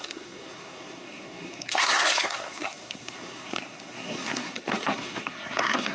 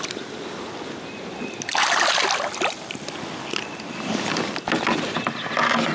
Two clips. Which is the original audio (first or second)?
second